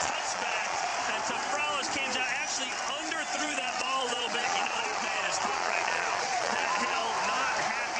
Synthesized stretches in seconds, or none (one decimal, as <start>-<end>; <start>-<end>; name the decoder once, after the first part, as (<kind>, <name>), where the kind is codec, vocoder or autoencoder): 0.0-0.9 (vocoder, Vocos); 3.3-7.0